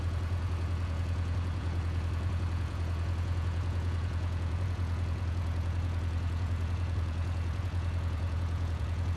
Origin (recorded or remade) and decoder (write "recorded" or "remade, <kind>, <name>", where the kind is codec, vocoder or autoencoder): remade, vocoder, Vocos